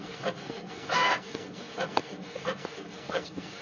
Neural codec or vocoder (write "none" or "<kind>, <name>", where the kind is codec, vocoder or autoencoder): codec, SNAC